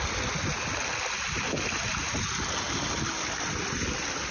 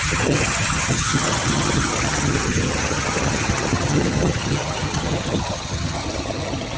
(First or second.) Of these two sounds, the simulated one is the second